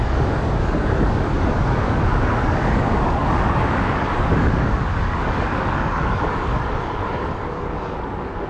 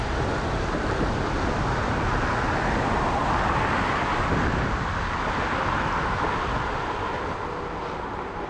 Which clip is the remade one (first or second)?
first